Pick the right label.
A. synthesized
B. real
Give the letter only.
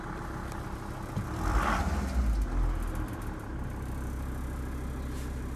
B